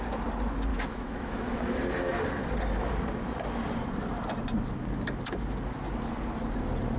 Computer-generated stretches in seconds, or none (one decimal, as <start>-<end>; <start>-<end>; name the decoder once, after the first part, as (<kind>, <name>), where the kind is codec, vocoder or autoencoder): 0.7-1.6 (autoencoder, DAC-VAE)